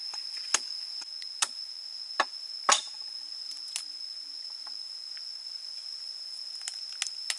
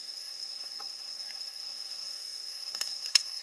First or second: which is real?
first